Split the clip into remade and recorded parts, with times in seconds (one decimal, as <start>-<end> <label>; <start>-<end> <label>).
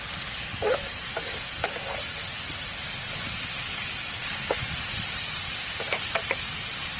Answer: 0.0-7.0 recorded